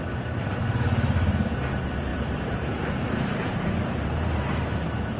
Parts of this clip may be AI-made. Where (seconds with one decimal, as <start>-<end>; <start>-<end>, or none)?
none